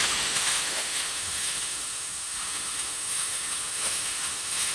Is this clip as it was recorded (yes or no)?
no